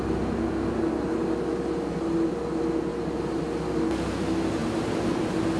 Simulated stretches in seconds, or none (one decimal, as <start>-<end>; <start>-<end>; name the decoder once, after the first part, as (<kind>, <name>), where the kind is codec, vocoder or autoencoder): 2.9-3.4 (vocoder, BigVGAN v2)